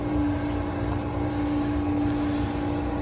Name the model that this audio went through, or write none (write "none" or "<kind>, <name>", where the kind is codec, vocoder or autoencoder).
none